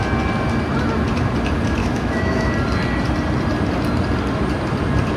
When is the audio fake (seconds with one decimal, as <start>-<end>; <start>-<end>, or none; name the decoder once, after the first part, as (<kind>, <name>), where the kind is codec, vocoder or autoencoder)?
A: 1.8-2.5 (autoencoder, DAC-VAE)